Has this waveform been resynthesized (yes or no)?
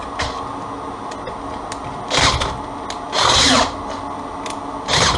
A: no